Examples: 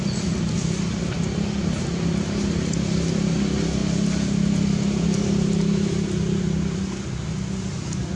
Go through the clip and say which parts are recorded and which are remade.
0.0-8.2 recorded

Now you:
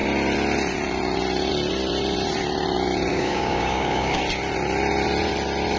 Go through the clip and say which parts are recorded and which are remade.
0.0-3.1 recorded; 3.1-4.2 remade; 4.2-5.8 recorded

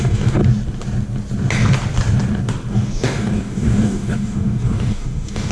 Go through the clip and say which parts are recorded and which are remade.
0.0-0.4 remade; 0.4-2.7 recorded; 2.7-5.5 remade

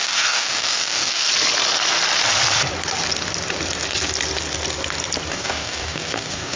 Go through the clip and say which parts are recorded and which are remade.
0.0-1.3 remade; 1.3-5.3 recorded; 5.3-6.6 remade

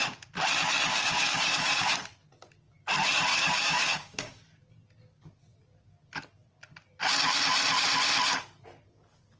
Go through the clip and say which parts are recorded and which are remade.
0.0-0.9 recorded; 0.9-1.9 remade; 1.9-3.3 recorded; 3.3-4.4 remade; 4.4-9.4 recorded

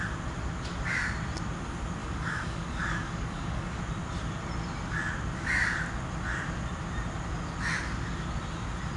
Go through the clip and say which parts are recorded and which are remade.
0.0-2.0 recorded; 2.0-3.8 remade; 3.8-9.0 recorded